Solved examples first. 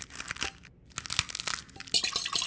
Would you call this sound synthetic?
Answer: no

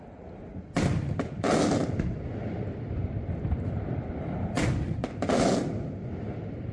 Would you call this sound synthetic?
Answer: no